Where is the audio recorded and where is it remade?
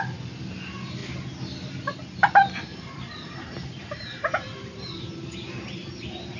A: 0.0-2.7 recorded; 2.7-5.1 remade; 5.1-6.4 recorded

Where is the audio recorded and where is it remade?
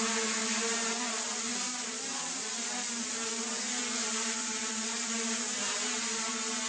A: 0.0-0.4 recorded; 0.4-1.0 remade; 1.0-1.5 recorded; 1.5-2.5 remade; 2.5-3.8 recorded; 3.8-6.3 remade; 6.3-6.7 recorded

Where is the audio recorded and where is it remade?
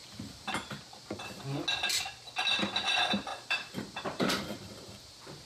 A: 0.0-0.5 remade; 0.5-3.3 recorded; 3.3-5.0 remade; 5.0-5.4 recorded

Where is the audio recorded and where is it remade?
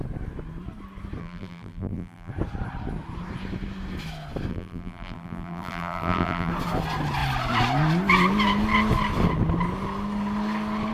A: 0.0-1.2 recorded; 1.2-2.3 remade; 2.3-4.5 recorded; 4.5-6.5 remade; 6.5-10.9 recorded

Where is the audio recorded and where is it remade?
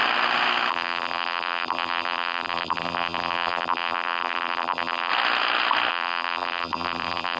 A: 0.0-0.7 recorded; 0.7-5.1 remade; 5.1-5.9 recorded; 5.9-7.4 remade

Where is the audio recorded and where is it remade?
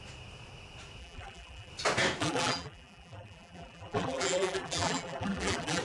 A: 0.0-1.0 recorded; 1.0-1.7 remade; 1.7-2.2 recorded; 2.2-5.8 remade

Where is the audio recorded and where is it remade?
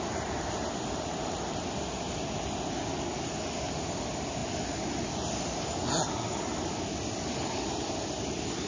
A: 0.0-8.7 recorded